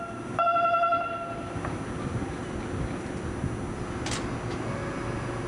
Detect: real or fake real